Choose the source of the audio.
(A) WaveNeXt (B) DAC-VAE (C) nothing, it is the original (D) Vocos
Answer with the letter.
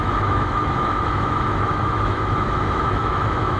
B